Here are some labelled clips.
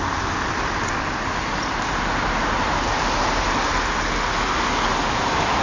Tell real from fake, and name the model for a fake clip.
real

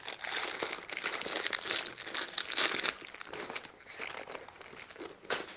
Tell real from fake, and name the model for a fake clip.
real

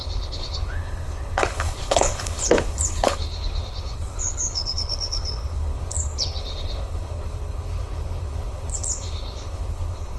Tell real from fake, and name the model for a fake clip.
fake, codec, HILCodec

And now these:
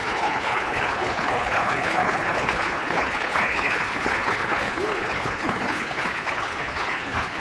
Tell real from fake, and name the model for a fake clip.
fake, codec, HILCodec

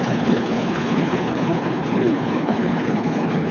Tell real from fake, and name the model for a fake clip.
fake, codec, HILCodec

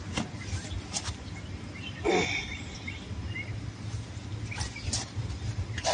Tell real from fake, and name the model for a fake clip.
real